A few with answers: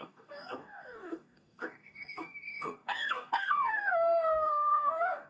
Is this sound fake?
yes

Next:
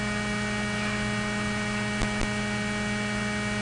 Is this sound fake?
no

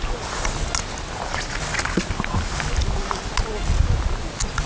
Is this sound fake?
no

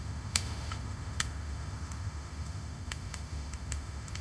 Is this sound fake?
yes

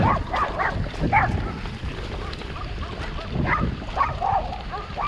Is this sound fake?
no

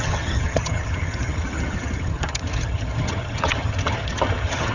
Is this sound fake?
yes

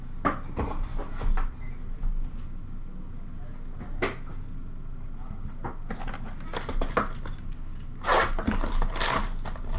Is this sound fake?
no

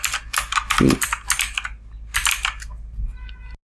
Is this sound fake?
no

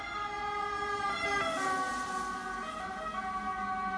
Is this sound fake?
no